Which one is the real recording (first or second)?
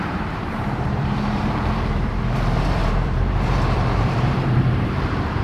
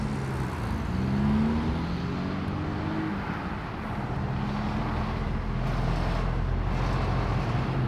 second